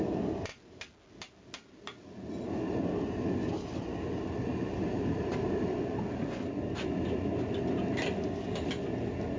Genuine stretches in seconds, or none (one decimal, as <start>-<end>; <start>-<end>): 0.0-4.5; 5.7-9.4